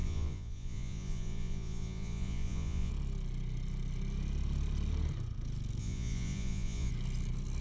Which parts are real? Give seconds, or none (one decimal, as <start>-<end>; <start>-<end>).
2.9-5.8; 6.9-7.6